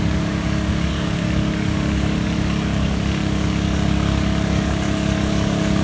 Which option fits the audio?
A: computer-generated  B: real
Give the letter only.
A